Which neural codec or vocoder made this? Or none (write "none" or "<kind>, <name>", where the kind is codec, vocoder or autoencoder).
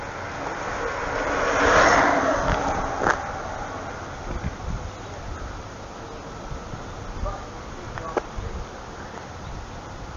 none